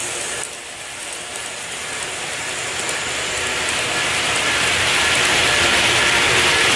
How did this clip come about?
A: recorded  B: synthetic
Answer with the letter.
A